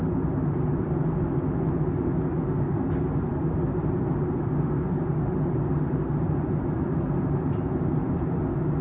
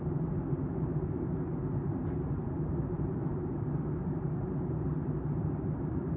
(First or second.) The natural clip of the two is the first